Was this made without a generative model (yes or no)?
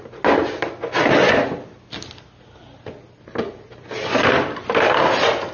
yes